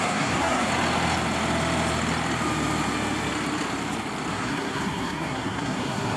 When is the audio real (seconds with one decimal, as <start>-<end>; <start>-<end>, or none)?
0.7-4.3